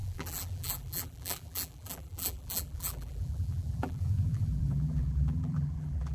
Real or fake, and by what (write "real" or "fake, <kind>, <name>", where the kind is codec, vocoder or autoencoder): fake, vocoder, BigVGAN v2